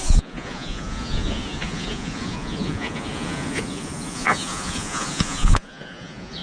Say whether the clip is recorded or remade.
remade